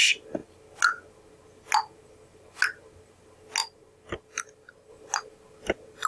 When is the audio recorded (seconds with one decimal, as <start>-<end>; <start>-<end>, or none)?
0.0-6.1